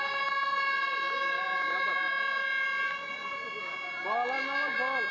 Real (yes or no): yes